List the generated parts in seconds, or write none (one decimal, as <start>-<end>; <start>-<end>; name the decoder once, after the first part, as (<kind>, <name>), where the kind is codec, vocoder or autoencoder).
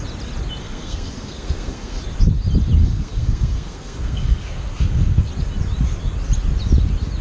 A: 0.6-2.0 (codec, SNAC); 2.8-5.3